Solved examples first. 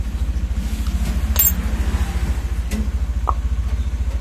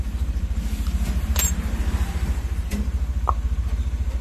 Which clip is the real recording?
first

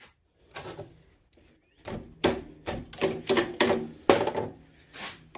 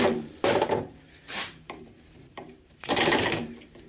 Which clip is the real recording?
first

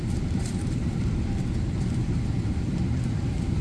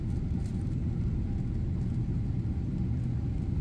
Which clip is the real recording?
second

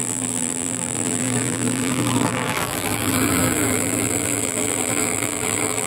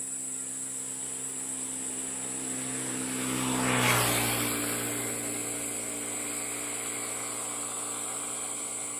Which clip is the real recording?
second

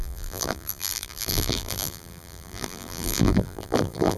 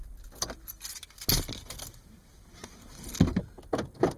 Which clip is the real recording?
second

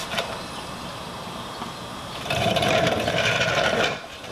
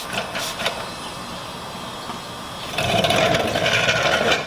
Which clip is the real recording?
second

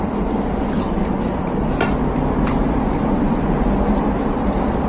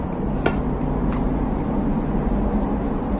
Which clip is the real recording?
second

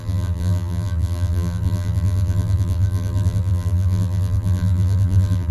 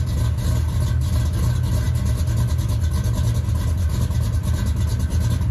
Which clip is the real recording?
second